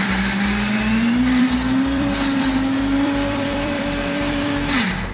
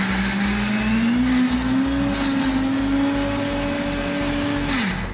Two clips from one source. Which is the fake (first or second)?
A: first